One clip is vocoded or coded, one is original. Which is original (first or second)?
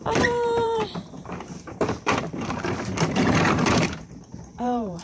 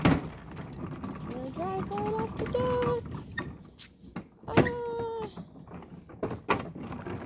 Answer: second